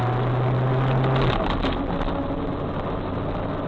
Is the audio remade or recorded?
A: recorded